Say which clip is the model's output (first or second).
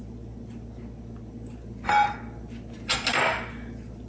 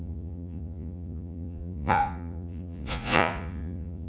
second